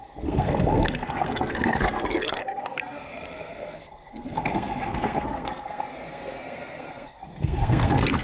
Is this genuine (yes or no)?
no